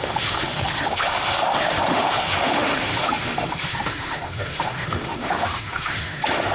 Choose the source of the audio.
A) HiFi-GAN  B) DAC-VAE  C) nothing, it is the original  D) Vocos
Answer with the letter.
B